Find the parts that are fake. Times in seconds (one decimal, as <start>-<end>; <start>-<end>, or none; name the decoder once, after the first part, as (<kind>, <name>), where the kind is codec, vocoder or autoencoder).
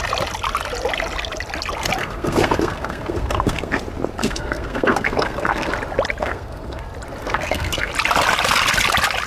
2.0-3.8 (codec, SNAC); 4.2-5.7; 6.2-6.8; 7.2-7.9